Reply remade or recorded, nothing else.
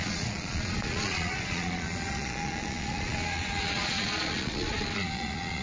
remade